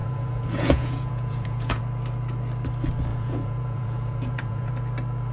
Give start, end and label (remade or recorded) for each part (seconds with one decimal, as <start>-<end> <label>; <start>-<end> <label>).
0.0-1.8 remade; 1.8-3.1 recorded; 3.1-4.7 remade; 4.7-5.3 recorded